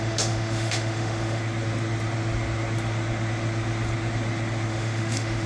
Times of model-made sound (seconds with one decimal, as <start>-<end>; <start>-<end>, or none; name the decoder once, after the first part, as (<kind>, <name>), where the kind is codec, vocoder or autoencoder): 0.0-1.4 (autoencoder, DAC-VAE); 4.7-5.5